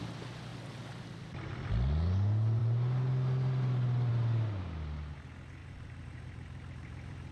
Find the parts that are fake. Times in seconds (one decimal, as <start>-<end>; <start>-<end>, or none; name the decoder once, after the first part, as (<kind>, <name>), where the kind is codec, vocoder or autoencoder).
5.6-7.3 (vocoder, BigVGAN v2)